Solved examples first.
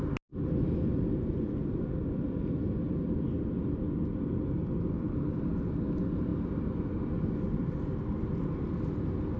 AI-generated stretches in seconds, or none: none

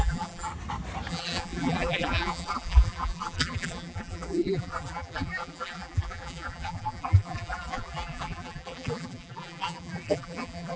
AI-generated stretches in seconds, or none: 0.0-0.5 (vocoder, BigVGAN v2); 1.1-10.8

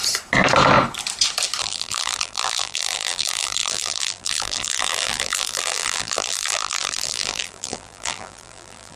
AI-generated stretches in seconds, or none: 1.6-9.0 (vocoder, BigVGAN v2)

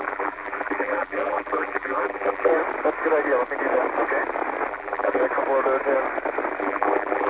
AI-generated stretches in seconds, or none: 0.0-2.5 (vocoder, BigVGAN v2); 4.7-5.2; 6.6-7.3

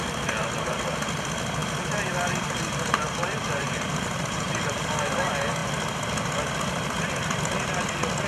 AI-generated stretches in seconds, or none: 1.6-5.0 (vocoder, BigVGAN v2)

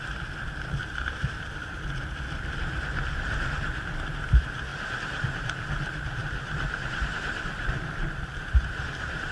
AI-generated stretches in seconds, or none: 0.8-1.8 (vocoder, BigVGAN v2); 4.7-5.4; 6.2-9.3